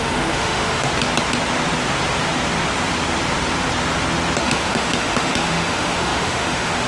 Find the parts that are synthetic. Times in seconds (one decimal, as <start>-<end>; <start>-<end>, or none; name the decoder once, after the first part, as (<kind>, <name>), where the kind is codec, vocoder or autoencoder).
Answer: 0.0-0.9 (autoencoder, DAC-VAE); 4.4-6.9

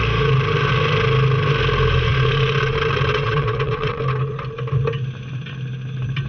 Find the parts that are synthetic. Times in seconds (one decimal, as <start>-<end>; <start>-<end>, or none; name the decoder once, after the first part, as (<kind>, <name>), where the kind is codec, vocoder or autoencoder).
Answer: 3.1-4.0 (vocoder, WaveNeXt)

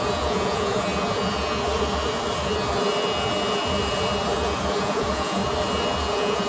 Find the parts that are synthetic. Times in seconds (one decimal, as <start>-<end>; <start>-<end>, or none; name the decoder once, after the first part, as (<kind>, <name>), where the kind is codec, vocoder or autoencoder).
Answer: 0.0-0.9 (vocoder, Vocos); 4.8-5.4; 6.1-6.5

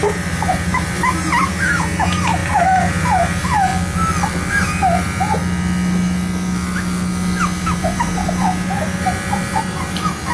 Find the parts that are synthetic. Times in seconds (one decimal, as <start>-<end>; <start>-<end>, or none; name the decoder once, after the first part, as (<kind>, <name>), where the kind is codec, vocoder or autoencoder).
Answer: 0.0-3.7 (vocoder, BigVGAN v2); 4.5-5.4; 7.6-10.3

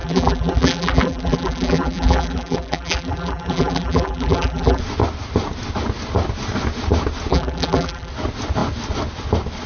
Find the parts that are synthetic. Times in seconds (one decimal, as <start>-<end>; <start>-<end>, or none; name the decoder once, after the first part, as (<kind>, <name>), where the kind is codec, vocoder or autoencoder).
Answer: 0.0-4.8 (vocoder, BigVGAN v2); 7.3-8.1

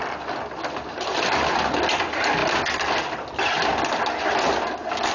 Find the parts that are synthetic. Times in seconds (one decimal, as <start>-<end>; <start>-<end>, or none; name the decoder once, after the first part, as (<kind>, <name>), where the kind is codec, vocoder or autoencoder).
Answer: none

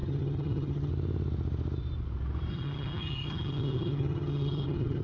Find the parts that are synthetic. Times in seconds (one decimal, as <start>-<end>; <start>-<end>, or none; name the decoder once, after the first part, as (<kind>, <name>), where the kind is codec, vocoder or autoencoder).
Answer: 0.0-0.9 (vocoder, HiFi-GAN); 2.5-5.0

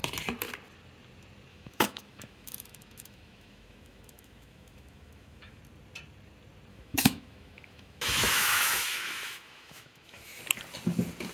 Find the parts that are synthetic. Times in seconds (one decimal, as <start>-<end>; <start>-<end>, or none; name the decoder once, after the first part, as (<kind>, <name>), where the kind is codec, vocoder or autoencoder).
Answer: 1.5-5.6 (autoencoder, DAC-VAE); 6.7-10.4